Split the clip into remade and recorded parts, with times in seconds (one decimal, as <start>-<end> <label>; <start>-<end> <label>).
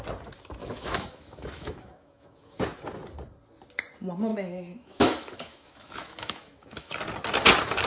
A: 0.0-0.6 recorded; 0.6-2.6 remade; 2.6-4.3 recorded; 4.3-6.9 remade; 6.9-7.9 recorded